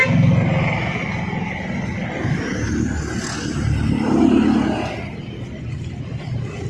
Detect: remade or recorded recorded